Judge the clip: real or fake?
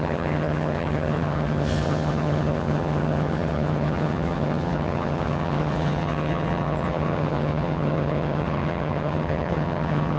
fake